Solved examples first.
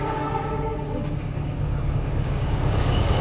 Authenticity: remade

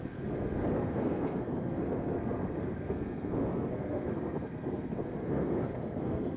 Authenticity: remade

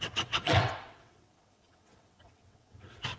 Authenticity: remade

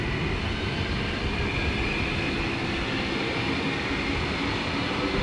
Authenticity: recorded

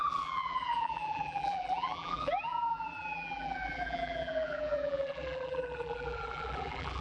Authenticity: remade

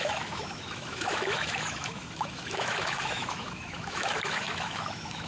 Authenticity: remade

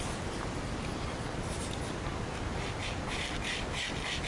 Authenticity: recorded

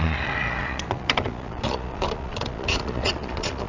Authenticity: remade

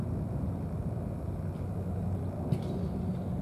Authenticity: recorded